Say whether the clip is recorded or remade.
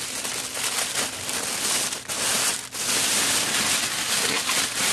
recorded